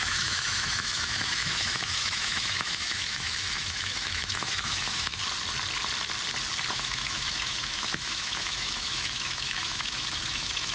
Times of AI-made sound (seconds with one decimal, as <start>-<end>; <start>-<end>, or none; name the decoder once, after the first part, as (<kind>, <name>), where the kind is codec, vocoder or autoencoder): 0.0-5.2 (autoencoder, DAC-VAE); 6.7-10.7

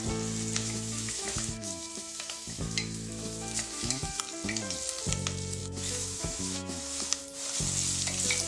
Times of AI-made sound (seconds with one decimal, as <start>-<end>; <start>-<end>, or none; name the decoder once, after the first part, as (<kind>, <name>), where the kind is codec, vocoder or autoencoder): 0.6-4.2 (autoencoder, DAC-VAE); 5.6-7.2

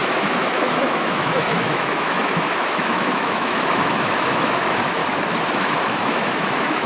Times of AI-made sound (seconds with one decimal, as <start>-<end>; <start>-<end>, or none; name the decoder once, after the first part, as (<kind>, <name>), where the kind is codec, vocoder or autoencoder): 0.0-5.0 (autoencoder, DAC-VAE); 5.5-6.9

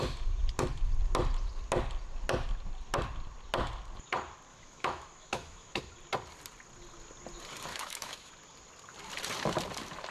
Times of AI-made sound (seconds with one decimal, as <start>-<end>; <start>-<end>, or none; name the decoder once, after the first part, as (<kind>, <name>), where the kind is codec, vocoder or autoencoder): 4.5-5.8 (autoencoder, DAC-VAE); 7.7-8.3

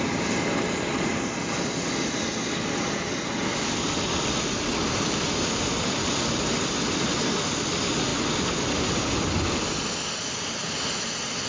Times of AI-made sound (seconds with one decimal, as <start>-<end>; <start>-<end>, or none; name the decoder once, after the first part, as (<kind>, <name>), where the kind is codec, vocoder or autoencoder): none